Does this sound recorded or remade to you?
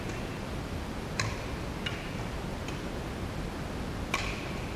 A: recorded